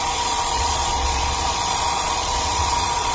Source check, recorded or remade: remade